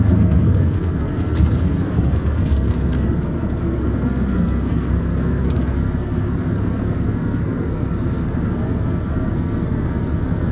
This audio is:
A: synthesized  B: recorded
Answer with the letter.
A